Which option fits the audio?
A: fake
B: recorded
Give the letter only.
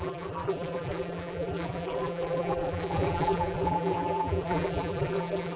A